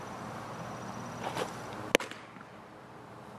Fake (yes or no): no